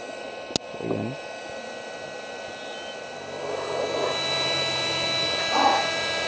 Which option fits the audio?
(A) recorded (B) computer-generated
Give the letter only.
A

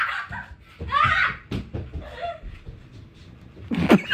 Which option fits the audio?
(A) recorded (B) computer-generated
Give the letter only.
A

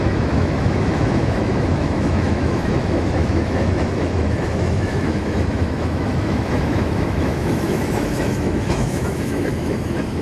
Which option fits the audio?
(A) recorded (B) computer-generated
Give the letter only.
B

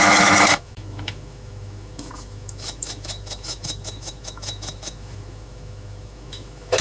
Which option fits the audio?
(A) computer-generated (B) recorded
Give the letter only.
A